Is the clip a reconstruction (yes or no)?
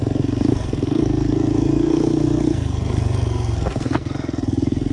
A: yes